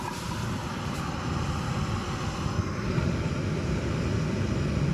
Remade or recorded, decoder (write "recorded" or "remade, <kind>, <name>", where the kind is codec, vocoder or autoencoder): recorded